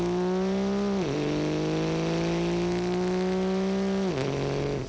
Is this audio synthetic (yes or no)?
no